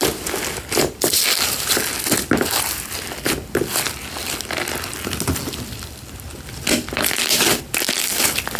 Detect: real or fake real